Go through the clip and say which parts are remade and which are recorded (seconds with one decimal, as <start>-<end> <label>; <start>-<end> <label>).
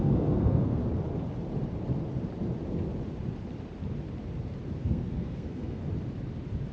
0.0-0.8 remade; 0.8-4.8 recorded; 4.8-5.8 remade; 5.8-6.7 recorded